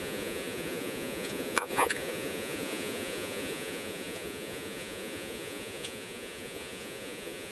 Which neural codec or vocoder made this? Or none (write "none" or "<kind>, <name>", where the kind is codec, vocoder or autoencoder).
vocoder, Vocos